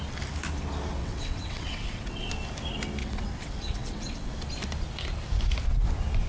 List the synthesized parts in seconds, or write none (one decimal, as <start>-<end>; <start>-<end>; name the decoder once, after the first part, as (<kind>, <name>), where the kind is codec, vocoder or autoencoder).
1.0-2.3 (vocoder, WaveNeXt); 3.0-4.3